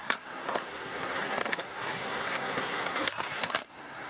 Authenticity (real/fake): fake